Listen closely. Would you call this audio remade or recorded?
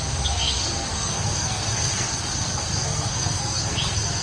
remade